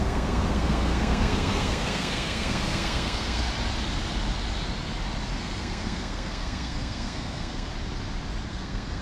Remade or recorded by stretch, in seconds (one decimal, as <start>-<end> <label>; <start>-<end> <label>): 0.0-3.5 remade; 3.5-5.4 recorded; 5.4-7.7 remade; 7.7-8.5 recorded; 8.5-9.0 remade